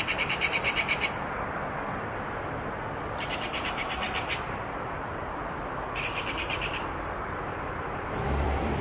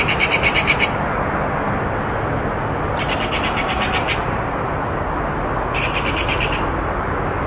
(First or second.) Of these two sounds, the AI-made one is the first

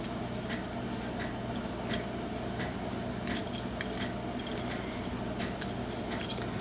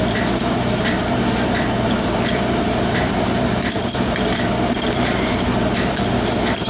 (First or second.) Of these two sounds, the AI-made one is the second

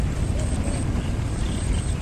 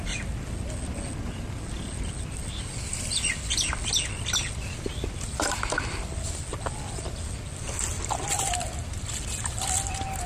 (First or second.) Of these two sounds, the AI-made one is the first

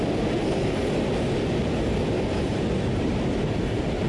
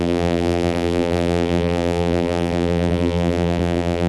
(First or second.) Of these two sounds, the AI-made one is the second